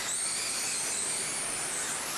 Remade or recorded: recorded